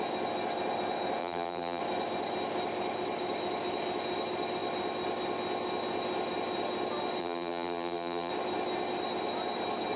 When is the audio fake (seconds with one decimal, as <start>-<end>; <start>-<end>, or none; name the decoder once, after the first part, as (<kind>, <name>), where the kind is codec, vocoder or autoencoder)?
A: 1.2-1.8 (vocoder, BigVGAN v2); 7.2-8.3